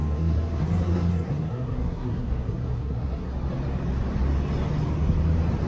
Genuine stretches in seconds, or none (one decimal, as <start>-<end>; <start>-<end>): 3.3-5.7

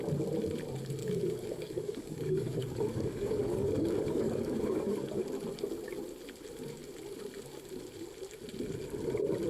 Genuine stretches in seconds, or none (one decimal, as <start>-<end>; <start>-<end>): 0.0-1.0; 5.2-9.5

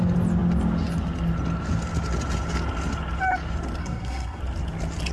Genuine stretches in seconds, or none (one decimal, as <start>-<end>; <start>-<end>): 0.0-3.8; 4.4-5.1

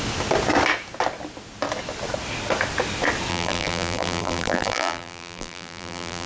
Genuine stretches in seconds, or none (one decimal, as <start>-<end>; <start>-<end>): 0.0-3.3

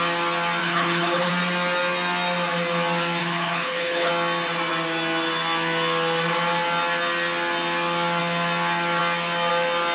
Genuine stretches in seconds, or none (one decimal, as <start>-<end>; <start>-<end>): 0.0-0.6; 1.3-3.2; 4.1-9.9

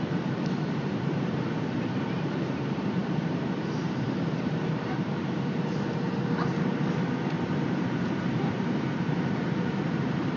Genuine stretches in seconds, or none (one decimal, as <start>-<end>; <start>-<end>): none